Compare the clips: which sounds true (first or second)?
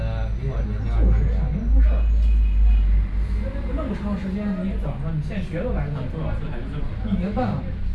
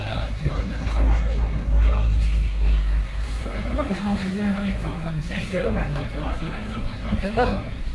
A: first